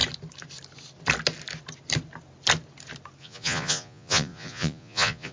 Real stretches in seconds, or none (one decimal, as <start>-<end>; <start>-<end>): 0.0-3.2